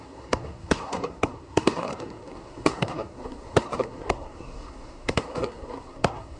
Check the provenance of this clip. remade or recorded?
remade